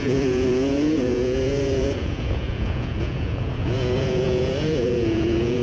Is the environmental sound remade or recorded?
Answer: remade